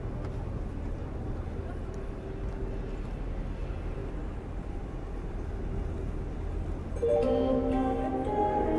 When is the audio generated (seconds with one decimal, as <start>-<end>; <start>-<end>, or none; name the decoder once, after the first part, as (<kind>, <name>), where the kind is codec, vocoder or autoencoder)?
none